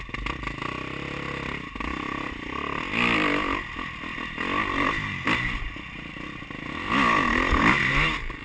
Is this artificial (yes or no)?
no